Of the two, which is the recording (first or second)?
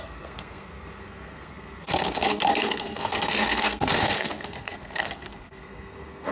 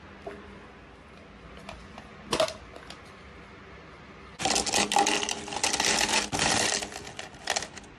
second